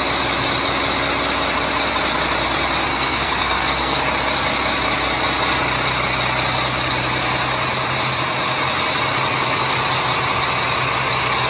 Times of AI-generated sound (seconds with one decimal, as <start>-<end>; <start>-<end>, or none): 2.9-4.0